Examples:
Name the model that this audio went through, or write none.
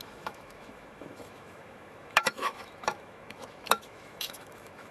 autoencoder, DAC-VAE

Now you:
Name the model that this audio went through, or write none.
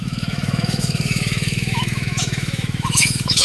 autoencoder, DAC-VAE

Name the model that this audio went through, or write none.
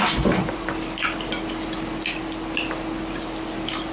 none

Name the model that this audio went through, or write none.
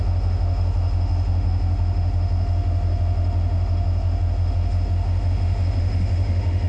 autoencoder, DAC-VAE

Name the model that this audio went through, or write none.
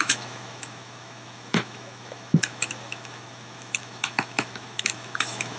autoencoder, DAC-VAE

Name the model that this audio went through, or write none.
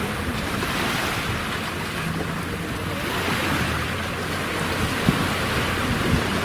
none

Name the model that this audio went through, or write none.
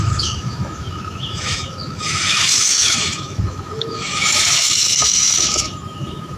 autoencoder, DAC-VAE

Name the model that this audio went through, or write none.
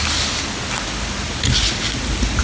none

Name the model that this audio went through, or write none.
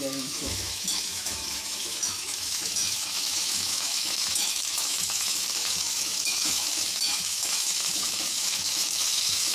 autoencoder, DAC-VAE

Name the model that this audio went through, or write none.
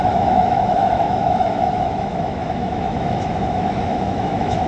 autoencoder, DAC-VAE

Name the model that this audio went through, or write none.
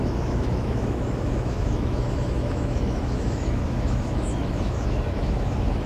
autoencoder, DAC-VAE